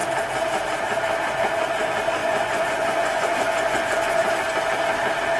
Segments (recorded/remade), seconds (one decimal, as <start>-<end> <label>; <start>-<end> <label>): 0.0-2.2 recorded; 2.2-4.4 remade; 4.4-5.4 recorded